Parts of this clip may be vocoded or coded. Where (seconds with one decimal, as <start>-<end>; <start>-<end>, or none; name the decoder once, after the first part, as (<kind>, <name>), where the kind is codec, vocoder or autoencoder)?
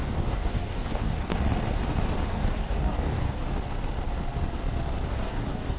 0.0-1.3 (codec, DAC); 2.3-3.4; 5.1-5.8